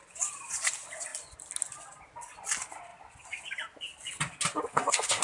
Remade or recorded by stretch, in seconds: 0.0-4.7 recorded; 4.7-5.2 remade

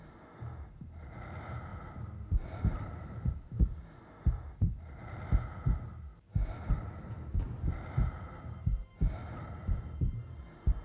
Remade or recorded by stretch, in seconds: 0.0-10.8 recorded